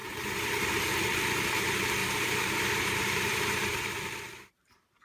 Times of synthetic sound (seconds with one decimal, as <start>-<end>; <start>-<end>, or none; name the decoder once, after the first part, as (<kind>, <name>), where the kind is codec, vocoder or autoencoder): 0.0-0.5 (vocoder, BigVGAN v2); 2.0-5.0